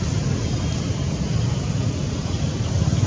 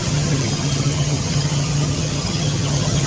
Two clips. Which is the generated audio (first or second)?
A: second